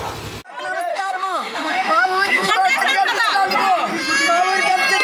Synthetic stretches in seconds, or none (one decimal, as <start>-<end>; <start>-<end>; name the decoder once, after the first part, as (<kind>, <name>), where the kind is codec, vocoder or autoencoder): 0.9-2.5 (autoencoder, DAC-VAE)